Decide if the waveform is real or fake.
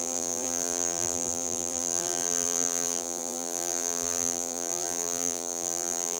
fake